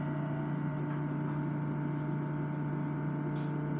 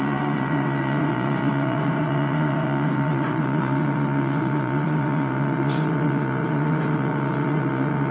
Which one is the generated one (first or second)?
second